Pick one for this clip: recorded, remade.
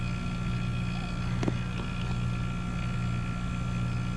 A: recorded